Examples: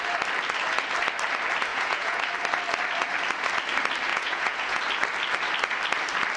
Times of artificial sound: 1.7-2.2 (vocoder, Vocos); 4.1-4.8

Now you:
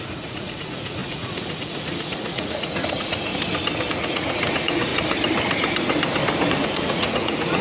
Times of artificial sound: 0.0-3.3 (vocoder, Vocos); 3.9-4.9; 6.5-7.6

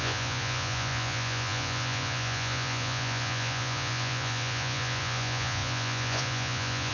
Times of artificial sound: 0.0-6.9 (vocoder, Vocos)

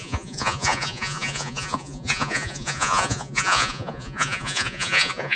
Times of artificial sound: 0.0-5.4 (vocoder, Vocos)

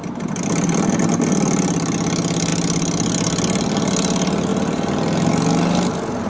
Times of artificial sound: none

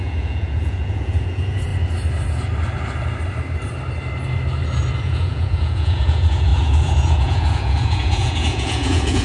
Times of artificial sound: 0.0-1.7 (vocoder, Vocos); 5.0-9.2

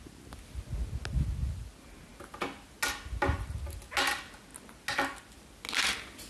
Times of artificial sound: none